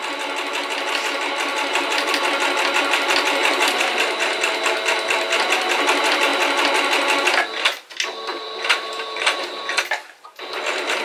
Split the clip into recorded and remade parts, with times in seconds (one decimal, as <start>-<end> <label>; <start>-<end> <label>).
0.0-1.5 recorded; 1.5-2.1 remade; 2.1-3.4 recorded; 3.4-4.4 remade; 4.4-8.3 recorded; 8.3-9.6 remade; 9.6-11.0 recorded